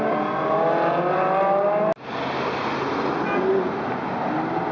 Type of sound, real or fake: real